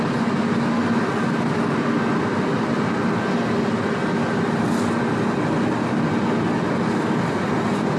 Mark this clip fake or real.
real